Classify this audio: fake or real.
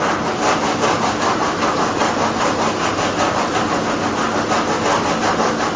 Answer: real